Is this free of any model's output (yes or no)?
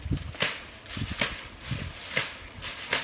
yes